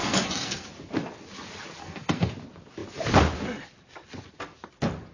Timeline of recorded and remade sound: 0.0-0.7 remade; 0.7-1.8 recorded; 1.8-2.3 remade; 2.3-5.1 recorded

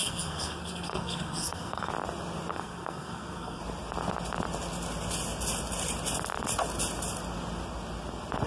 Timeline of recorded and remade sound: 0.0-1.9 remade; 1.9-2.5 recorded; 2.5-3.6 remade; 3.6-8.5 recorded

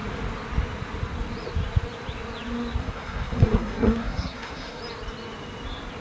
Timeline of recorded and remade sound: 0.0-2.8 recorded; 2.8-4.8 remade; 4.8-6.0 recorded

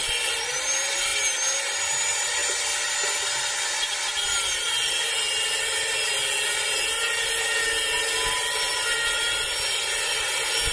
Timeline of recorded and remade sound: 0.0-10.7 recorded

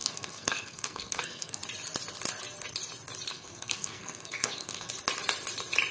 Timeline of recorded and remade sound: 0.0-1.6 remade; 1.6-3.3 recorded; 3.3-4.9 remade; 4.9-5.9 recorded

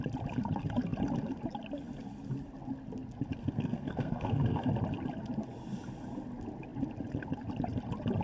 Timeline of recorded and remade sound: 0.0-3.4 recorded; 3.4-4.7 remade; 4.7-8.2 recorded

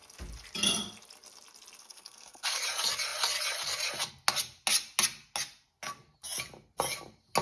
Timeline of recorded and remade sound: 0.0-1.8 recorded; 1.8-2.6 remade; 2.6-7.4 recorded

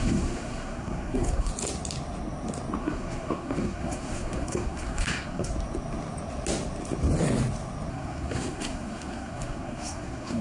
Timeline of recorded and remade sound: 0.0-1.5 remade; 1.5-2.8 recorded; 2.8-5.5 remade; 5.5-7.9 recorded; 7.9-10.4 remade